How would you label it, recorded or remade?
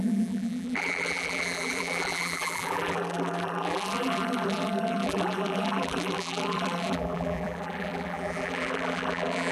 remade